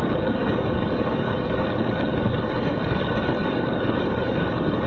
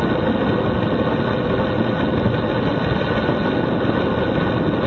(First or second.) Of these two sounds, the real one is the second